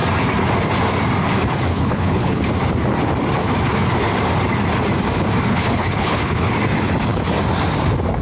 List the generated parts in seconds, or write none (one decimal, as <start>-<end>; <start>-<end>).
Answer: 1.7-2.4; 5.5-6.5